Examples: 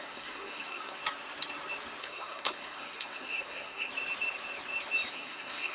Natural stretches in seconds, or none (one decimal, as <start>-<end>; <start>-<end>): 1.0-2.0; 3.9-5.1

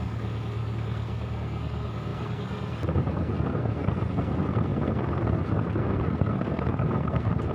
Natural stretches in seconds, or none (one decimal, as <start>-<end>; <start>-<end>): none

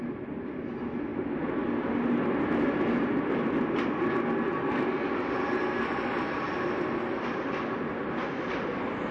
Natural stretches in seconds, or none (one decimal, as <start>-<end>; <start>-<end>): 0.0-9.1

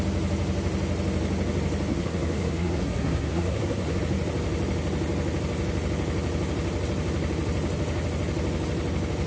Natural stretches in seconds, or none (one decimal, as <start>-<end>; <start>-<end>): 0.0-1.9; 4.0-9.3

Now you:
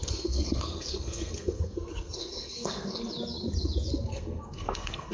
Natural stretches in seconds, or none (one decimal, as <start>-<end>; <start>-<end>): 3.0-4.1